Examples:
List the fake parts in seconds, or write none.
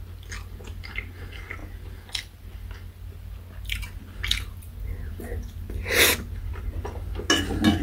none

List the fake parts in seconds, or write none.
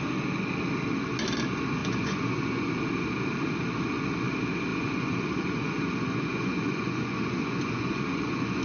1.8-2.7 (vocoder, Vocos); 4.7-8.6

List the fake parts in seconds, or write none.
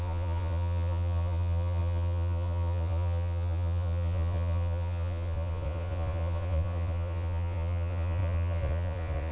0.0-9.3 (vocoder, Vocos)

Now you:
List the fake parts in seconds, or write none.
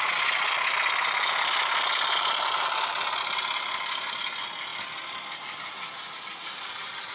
none